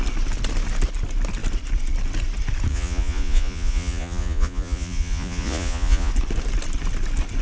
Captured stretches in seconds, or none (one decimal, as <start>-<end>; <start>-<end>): 0.0-2.7; 6.1-7.4